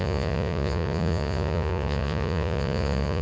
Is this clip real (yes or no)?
no